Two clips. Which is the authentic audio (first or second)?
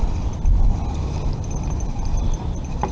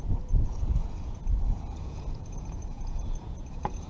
first